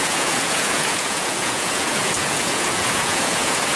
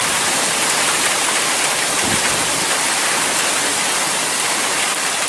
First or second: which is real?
second